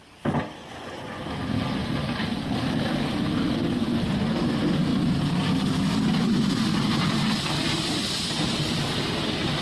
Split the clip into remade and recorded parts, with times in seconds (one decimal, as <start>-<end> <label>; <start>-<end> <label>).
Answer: 0.0-0.6 recorded; 0.6-1.2 remade; 1.2-9.6 recorded

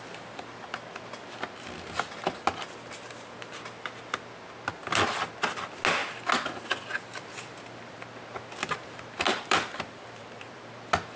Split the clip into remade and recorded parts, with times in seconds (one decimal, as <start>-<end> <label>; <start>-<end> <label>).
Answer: 0.0-4.8 recorded; 4.8-5.3 remade; 5.3-9.3 recorded; 9.3-10.7 remade; 10.7-11.2 recorded

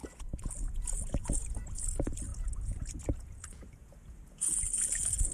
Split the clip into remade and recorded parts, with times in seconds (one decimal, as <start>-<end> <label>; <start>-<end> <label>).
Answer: 0.0-5.3 remade

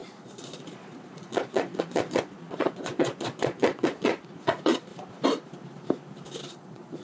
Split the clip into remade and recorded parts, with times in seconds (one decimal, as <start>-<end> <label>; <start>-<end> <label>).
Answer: 0.0-4.9 remade; 4.9-6.5 recorded; 6.5-7.0 remade

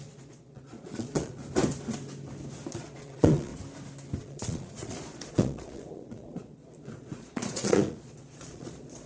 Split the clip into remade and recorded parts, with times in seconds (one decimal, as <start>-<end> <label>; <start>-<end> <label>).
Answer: 0.0-1.4 remade; 1.4-2.7 recorded; 2.7-3.5 remade; 3.5-4.2 recorded; 4.2-9.1 remade

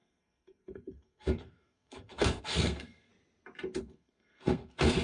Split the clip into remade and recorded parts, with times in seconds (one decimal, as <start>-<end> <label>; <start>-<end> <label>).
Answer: 0.0-3.1 remade; 3.1-3.8 recorded; 3.8-5.0 remade

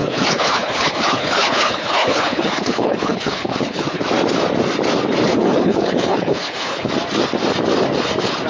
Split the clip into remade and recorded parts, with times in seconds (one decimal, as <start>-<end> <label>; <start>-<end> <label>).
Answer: 0.0-4.0 remade; 4.0-5.3 recorded; 5.3-6.9 remade; 6.9-8.5 recorded